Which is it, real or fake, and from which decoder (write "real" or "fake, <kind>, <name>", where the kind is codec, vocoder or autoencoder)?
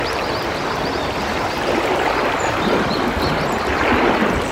real